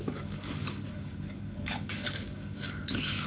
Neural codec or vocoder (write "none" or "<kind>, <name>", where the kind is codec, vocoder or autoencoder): codec, DAC